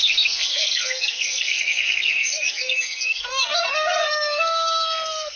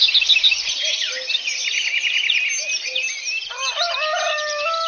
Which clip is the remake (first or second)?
first